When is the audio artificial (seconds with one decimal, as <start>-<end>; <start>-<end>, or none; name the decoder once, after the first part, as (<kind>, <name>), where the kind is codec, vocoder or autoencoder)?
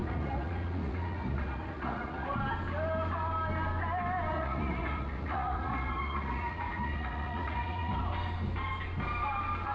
0.0-2.4 (vocoder, Vocos); 4.3-8.0